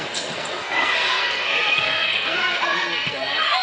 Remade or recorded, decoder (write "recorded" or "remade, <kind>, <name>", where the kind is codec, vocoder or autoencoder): remade, codec, SNAC